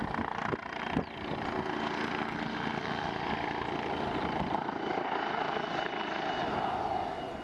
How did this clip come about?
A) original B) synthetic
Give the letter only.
A